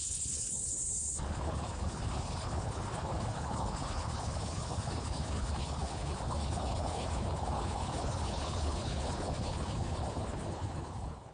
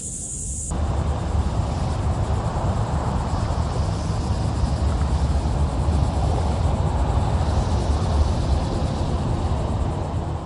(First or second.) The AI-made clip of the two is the first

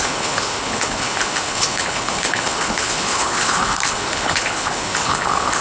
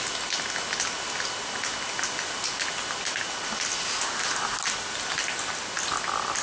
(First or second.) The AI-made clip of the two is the first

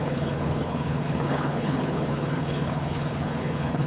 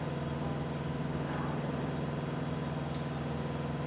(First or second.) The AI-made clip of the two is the first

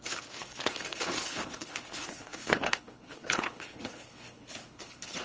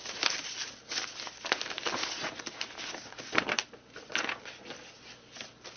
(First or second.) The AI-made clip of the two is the first